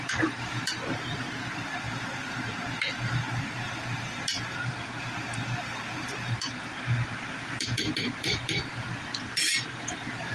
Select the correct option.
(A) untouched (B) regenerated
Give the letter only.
B